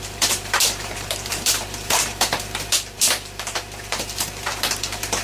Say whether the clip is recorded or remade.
remade